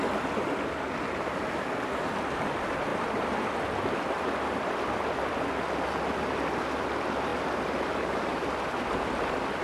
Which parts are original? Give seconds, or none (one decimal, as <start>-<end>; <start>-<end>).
0.0-9.6